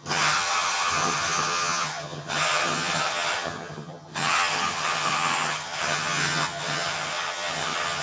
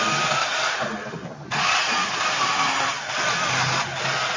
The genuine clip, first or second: second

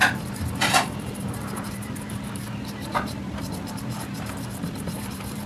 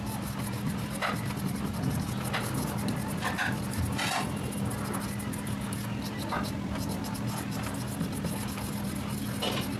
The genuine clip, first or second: second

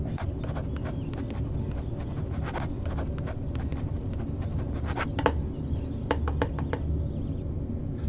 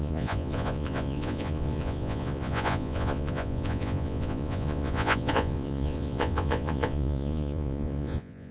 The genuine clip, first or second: first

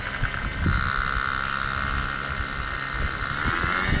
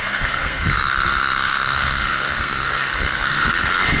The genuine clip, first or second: first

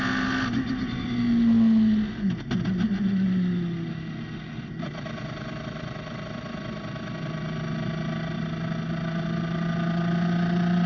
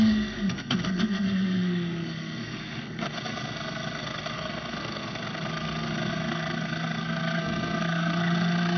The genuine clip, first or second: first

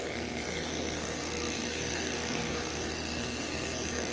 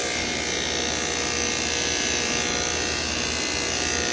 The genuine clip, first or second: second